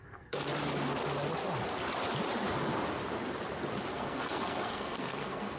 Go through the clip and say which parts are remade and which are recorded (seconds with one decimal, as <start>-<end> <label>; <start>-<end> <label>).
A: 0.0-0.5 remade; 0.5-3.9 recorded; 3.9-5.6 remade